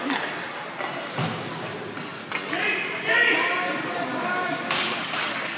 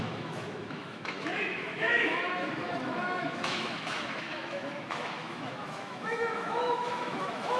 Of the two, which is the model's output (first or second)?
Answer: second